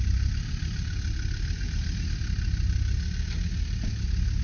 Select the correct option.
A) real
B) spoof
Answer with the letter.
A